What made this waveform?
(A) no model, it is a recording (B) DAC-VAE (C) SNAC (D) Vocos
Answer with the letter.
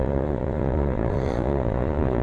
D